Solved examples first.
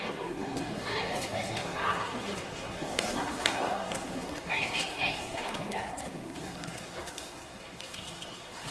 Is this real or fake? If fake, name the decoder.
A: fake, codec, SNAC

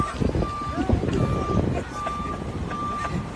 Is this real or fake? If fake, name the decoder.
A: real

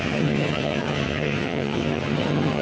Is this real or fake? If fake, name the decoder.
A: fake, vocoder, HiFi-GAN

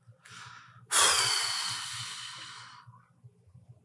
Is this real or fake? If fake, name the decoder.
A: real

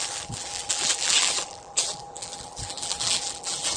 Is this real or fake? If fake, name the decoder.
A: fake, vocoder, BigVGAN v2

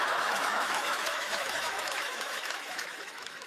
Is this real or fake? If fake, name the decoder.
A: fake, autoencoder, DAC-VAE